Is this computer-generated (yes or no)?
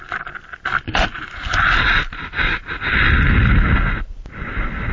no